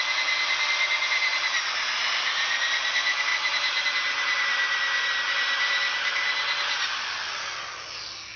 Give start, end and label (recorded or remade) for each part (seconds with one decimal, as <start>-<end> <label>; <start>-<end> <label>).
0.0-8.4 recorded